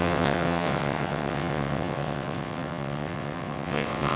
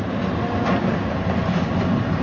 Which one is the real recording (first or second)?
second